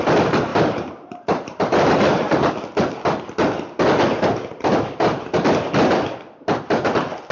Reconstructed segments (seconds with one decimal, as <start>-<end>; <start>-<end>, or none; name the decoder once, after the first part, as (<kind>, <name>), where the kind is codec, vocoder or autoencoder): 0.5-2.5 (vocoder, BigVGAN v2)